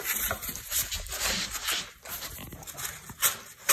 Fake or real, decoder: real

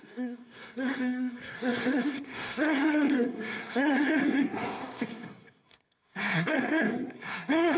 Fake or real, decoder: fake, codec, SNAC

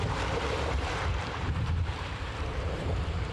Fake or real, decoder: fake, vocoder, BigVGAN v2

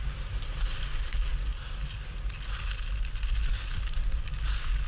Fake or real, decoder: real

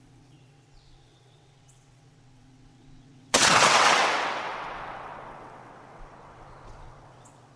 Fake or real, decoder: fake, vocoder, WaveNeXt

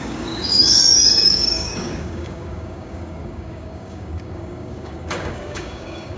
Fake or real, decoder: fake, codec, DAC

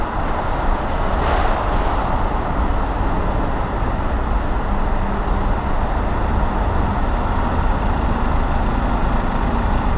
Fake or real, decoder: real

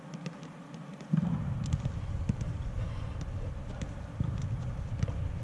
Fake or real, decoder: real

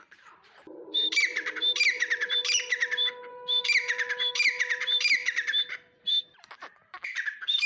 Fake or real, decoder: fake, vocoder, BigVGAN v2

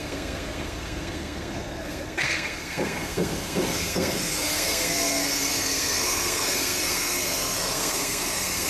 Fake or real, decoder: fake, codec, SNAC